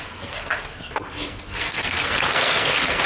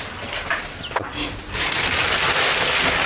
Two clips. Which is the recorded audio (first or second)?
second